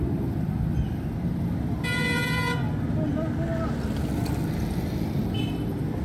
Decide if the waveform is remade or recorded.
recorded